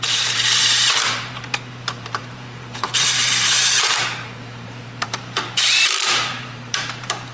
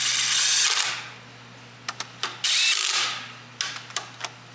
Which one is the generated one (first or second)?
first